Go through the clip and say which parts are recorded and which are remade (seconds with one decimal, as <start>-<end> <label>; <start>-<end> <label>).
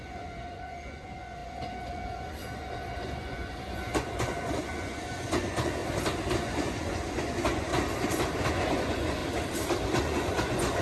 0.0-5.8 remade; 5.8-6.4 recorded; 6.4-7.7 remade; 7.7-8.5 recorded; 8.5-9.2 remade; 9.2-10.0 recorded; 10.0-10.8 remade